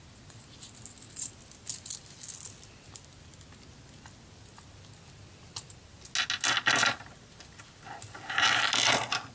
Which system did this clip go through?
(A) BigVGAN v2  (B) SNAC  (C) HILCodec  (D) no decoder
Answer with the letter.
D